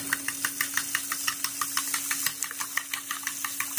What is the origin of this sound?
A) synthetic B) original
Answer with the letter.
B